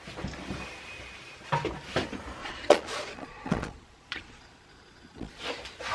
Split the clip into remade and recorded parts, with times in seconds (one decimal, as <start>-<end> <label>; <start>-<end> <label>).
0.0-2.4 recorded; 2.4-5.3 remade; 5.3-5.9 recorded